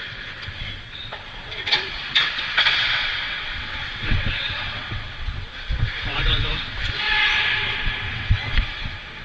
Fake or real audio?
fake